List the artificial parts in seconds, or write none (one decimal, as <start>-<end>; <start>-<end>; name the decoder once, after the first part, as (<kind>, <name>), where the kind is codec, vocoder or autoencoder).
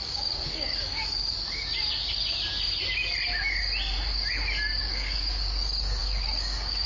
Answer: 0.0-1.0 (codec, DAC); 4.8-6.9